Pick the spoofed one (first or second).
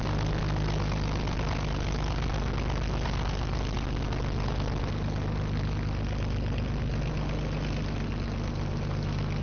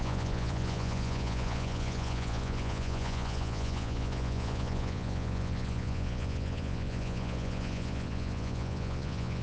second